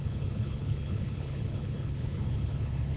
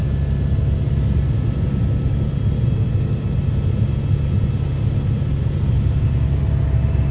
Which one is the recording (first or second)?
second